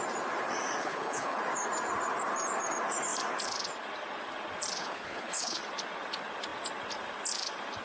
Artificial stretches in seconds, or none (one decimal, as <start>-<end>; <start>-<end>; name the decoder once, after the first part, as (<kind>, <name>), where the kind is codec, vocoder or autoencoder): 0.8-1.4 (codec, HILCodec); 4.8-5.6